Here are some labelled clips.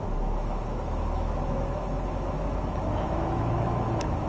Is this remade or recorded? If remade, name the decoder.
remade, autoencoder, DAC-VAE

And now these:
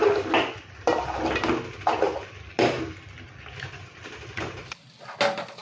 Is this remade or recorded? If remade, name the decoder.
recorded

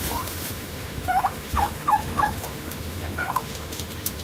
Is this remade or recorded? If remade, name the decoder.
remade, autoencoder, DAC-VAE